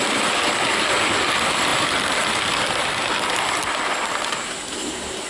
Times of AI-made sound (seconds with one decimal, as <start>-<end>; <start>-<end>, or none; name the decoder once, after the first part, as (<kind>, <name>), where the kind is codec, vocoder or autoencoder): none